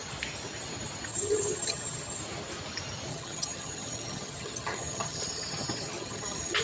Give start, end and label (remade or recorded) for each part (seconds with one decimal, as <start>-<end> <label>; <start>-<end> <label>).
0.0-1.1 recorded; 1.1-2.2 remade; 2.2-3.1 recorded; 3.1-6.6 remade